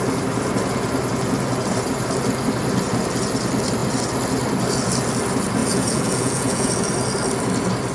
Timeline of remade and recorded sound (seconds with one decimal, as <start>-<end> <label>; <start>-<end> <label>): 0.0-5.6 recorded; 5.6-6.7 remade; 6.7-7.9 recorded